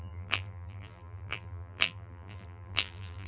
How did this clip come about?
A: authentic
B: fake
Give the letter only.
B